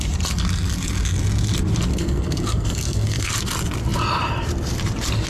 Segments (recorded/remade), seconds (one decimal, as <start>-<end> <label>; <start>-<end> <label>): 0.0-1.9 recorded; 1.9-3.3 remade; 3.3-5.3 recorded

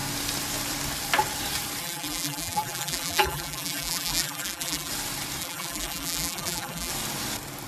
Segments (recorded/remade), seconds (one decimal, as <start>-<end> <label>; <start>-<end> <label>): 0.0-1.8 recorded; 1.8-4.9 remade; 4.9-5.4 recorded; 5.4-6.9 remade; 6.9-7.7 recorded

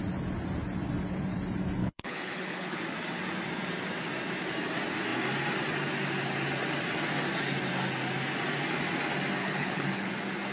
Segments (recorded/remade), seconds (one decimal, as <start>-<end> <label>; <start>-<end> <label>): 0.0-1.8 recorded; 1.8-2.8 remade; 2.8-9.4 recorded; 9.4-10.1 remade; 10.1-10.5 recorded